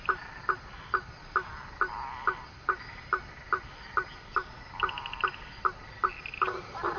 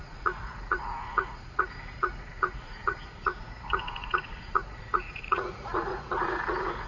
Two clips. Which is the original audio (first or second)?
first